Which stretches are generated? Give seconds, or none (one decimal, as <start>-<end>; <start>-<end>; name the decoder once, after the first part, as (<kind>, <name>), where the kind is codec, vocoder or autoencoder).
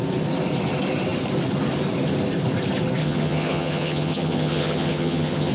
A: 3.0-5.5 (vocoder, HiFi-GAN)